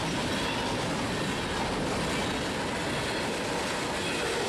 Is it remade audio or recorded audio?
recorded